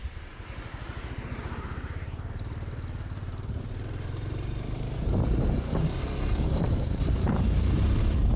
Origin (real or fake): fake